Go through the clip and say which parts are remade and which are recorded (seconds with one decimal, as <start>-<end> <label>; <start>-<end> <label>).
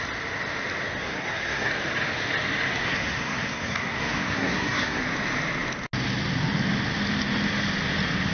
0.0-1.0 recorded; 1.0-1.7 remade; 1.7-2.8 recorded; 2.8-5.0 remade; 5.0-8.3 recorded